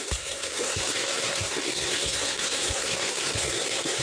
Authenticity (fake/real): fake